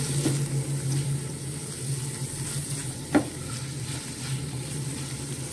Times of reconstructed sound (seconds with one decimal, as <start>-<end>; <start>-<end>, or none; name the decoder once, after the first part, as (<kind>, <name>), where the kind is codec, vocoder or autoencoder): 2.8-5.5 (vocoder, BigVGAN v2)